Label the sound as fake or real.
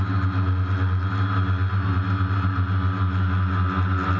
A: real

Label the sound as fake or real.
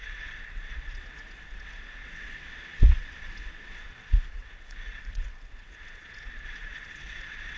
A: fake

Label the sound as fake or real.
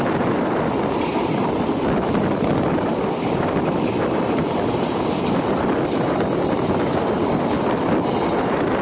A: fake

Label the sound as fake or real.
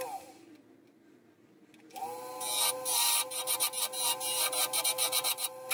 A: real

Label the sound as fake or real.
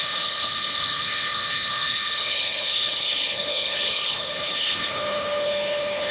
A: fake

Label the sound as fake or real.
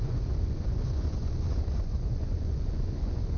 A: fake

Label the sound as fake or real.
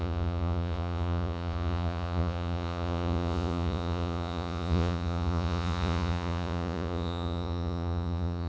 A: fake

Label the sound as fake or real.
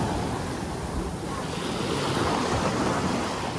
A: real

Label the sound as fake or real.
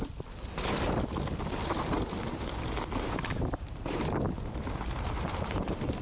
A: fake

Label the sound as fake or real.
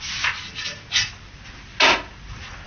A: real